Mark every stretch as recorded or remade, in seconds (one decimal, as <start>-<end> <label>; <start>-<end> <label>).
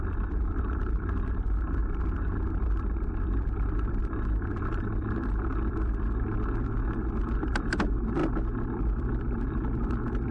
0.0-1.8 remade; 1.8-2.6 recorded; 2.6-8.2 remade; 8.2-8.7 recorded; 8.7-10.3 remade